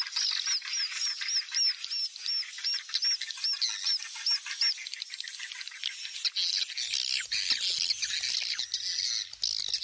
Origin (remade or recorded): recorded